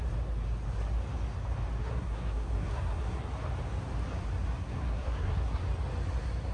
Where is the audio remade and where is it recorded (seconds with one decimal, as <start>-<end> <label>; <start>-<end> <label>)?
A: 0.0-1.8 recorded; 1.8-3.2 remade; 3.2-4.6 recorded; 4.6-5.6 remade; 5.6-6.5 recorded